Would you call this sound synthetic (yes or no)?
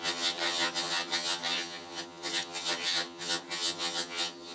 yes